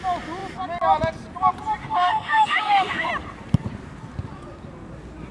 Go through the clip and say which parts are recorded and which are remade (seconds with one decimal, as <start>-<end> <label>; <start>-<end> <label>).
0.0-1.8 recorded; 1.8-3.1 remade; 3.1-5.3 recorded